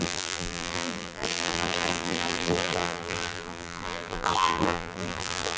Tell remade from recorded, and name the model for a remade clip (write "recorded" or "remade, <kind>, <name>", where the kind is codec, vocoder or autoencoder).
remade, vocoder, BigVGAN v2